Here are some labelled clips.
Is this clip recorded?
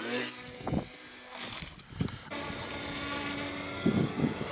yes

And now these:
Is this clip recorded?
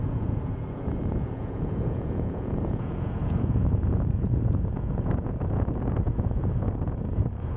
no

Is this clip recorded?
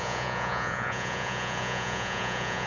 no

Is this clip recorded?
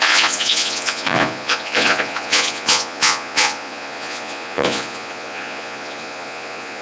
no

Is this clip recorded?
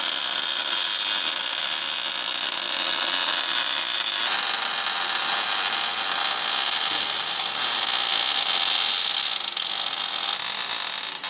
yes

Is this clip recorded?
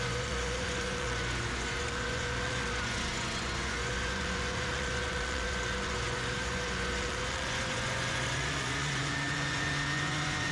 no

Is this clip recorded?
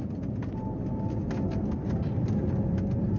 yes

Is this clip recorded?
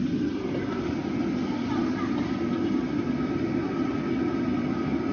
yes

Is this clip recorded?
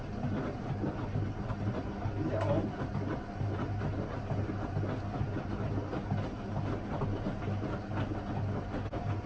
yes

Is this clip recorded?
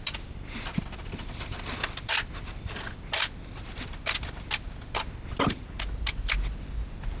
yes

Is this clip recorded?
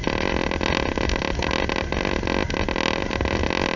yes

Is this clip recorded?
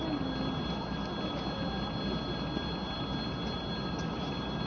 yes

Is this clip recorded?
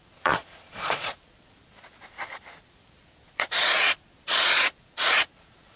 no